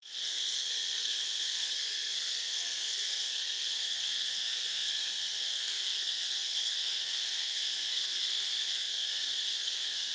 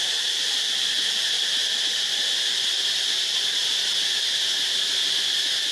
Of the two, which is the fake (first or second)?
first